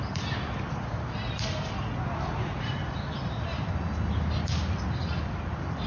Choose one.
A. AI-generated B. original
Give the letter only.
B